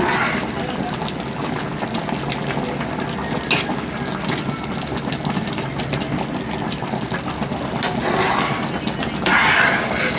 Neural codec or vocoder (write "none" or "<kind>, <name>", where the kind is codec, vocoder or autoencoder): none